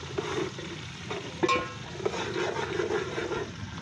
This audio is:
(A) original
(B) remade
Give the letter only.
A